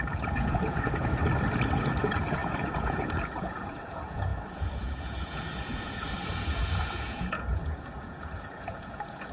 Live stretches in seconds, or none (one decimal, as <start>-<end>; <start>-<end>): 1.2-2.0

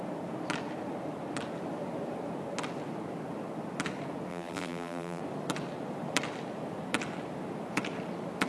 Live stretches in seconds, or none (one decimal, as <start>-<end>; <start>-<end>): 0.0-4.3; 5.2-8.5

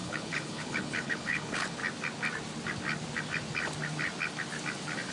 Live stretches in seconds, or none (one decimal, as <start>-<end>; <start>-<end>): 1.8-5.1

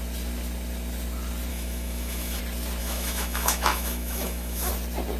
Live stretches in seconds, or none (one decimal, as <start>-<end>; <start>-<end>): 0.0-1.5; 2.4-2.8; 4.7-5.2